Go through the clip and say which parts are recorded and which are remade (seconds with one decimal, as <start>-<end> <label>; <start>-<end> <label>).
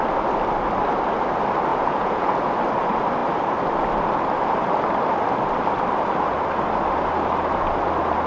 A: 0.0-1.7 recorded; 1.7-2.3 remade; 2.3-8.3 recorded